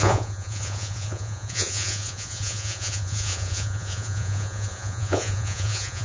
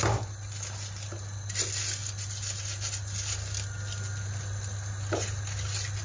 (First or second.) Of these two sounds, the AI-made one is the first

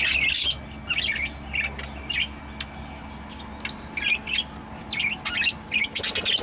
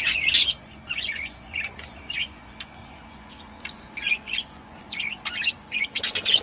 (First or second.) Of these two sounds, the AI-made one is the second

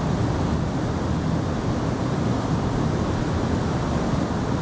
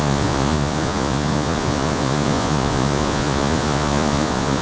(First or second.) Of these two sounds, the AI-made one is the second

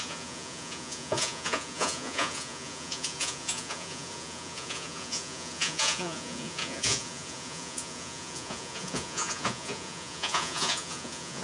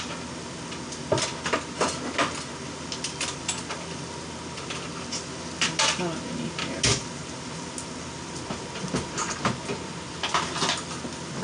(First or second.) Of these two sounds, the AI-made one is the first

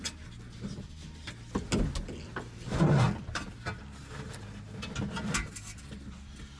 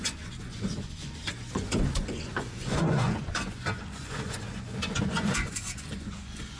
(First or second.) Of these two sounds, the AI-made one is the second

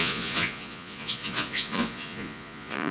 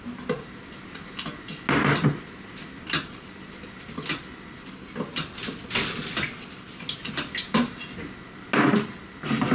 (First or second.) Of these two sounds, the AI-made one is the first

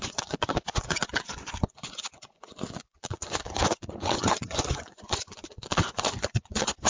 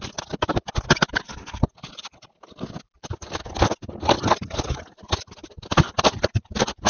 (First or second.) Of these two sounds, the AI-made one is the first